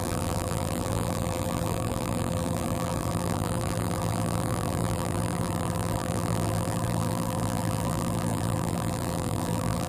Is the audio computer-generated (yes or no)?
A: yes